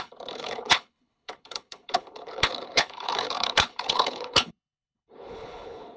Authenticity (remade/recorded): remade